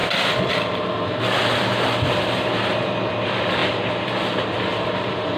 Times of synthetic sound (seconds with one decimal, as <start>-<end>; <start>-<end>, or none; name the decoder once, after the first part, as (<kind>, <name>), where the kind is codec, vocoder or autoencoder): 0.5-5.4 (vocoder, BigVGAN v2)